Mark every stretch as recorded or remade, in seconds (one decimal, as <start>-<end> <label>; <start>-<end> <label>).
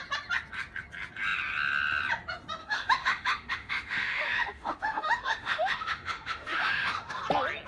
0.0-2.6 recorded; 2.6-7.2 remade; 7.2-7.7 recorded